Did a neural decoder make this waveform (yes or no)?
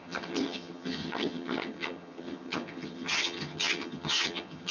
yes